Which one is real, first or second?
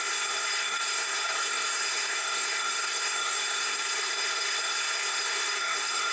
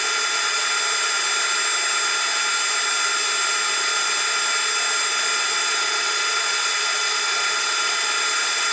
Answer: second